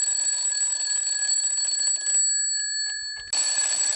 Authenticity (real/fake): real